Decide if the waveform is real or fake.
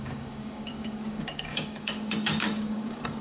fake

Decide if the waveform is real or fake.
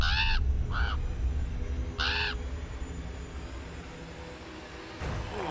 real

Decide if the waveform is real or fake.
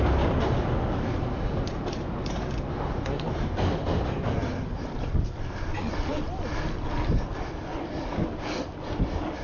real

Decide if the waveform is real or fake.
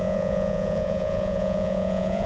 fake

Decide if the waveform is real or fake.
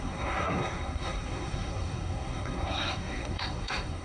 fake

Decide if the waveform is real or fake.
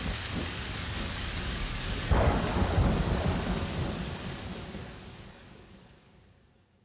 fake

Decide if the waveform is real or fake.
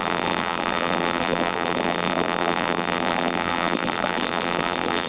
fake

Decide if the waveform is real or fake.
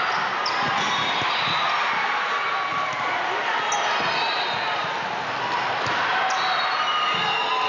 real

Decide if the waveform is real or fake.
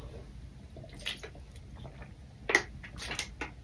real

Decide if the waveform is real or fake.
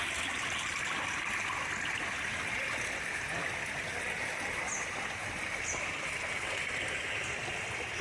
real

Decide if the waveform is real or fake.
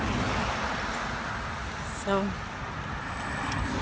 real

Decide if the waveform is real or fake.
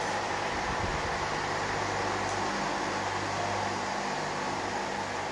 real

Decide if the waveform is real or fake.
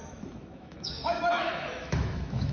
fake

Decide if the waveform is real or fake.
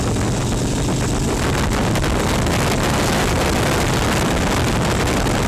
real